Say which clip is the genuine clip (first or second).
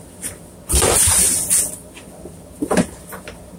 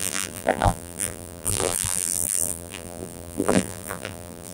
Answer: first